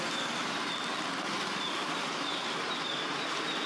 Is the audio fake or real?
real